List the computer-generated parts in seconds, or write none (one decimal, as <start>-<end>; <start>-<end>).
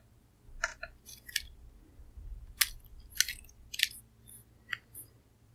none